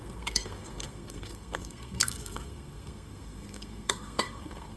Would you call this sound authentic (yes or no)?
no